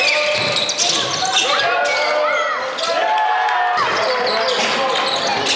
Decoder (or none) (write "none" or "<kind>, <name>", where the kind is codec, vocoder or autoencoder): none